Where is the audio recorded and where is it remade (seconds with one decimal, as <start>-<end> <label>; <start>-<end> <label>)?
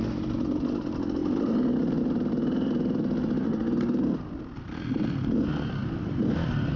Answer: 0.0-5.8 recorded; 5.8-6.8 remade